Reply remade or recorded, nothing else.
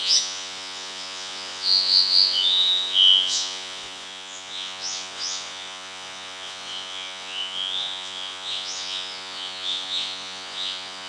remade